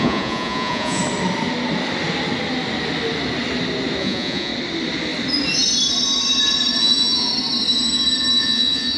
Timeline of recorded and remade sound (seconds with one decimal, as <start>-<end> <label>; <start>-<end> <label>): 0.0-1.0 remade; 1.0-4.0 recorded; 4.0-4.5 remade; 4.5-6.8 recorded; 6.8-7.3 remade; 7.3-8.4 recorded; 8.4-9.0 remade